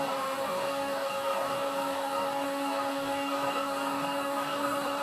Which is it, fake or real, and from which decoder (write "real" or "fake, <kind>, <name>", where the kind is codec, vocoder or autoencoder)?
fake, codec, DAC